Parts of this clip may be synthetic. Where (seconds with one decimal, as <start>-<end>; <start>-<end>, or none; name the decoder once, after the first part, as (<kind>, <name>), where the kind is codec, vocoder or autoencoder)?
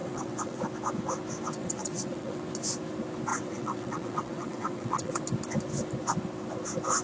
0.0-0.6 (vocoder, WaveNeXt); 1.6-2.4; 3.3-5.2